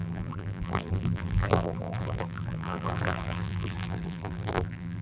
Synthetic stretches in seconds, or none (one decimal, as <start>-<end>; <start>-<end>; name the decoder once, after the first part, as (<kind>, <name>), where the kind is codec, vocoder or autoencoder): 0.0-5.0 (vocoder, BigVGAN v2)